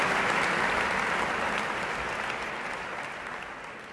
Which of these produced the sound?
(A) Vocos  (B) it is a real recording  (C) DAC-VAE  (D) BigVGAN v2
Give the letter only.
B